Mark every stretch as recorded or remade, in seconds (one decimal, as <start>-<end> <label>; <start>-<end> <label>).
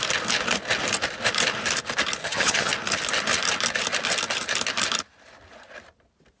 0.0-2.2 recorded; 2.2-2.7 remade; 2.7-6.4 recorded